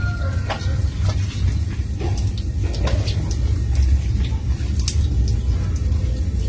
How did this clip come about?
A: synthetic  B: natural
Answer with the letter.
B